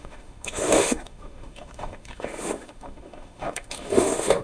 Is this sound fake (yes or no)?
yes